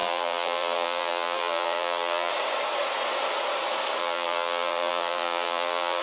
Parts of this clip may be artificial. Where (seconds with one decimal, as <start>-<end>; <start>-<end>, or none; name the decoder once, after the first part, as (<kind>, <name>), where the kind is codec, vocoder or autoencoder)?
0.0-2.3 (vocoder, BigVGAN v2); 4.0-6.0